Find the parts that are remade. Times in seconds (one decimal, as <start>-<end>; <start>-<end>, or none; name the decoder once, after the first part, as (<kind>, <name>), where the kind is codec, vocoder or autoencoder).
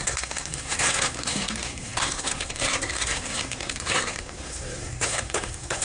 0.0-5.8 (codec, SNAC)